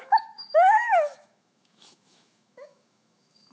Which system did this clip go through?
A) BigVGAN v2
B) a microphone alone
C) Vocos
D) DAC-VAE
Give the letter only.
D